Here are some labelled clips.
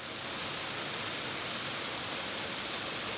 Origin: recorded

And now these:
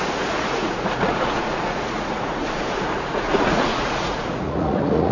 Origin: remade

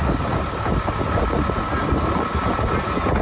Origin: recorded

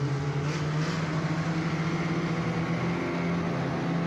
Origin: recorded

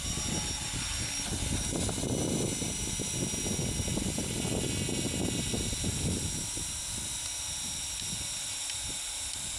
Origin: recorded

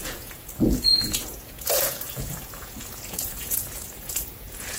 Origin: remade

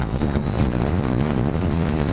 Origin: remade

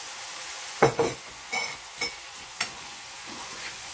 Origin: remade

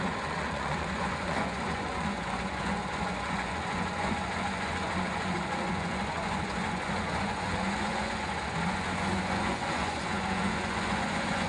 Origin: remade